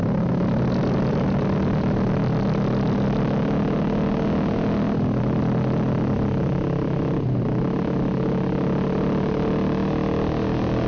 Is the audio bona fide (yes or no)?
yes